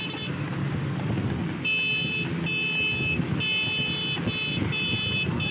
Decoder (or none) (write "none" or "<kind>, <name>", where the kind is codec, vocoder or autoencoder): none